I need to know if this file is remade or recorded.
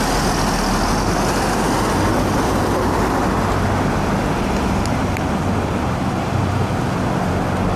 recorded